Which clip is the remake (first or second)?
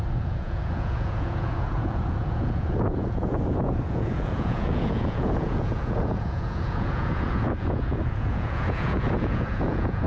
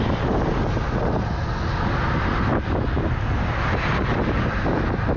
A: first